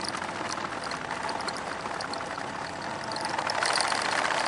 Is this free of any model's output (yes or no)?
yes